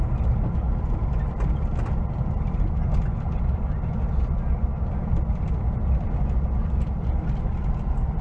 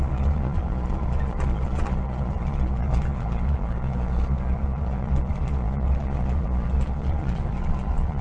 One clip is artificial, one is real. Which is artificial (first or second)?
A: second